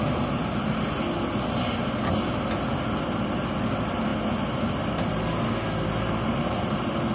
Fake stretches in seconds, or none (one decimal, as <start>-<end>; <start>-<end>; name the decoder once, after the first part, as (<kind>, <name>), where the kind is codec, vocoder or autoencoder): none